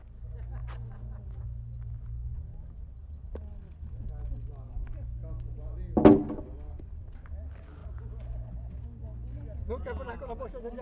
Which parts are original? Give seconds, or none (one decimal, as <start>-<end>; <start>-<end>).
0.0-10.8